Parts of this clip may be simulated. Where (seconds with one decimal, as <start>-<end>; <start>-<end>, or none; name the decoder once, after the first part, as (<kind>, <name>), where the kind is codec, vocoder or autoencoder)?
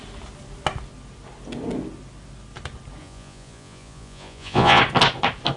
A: 3.0-4.8 (vocoder, Vocos)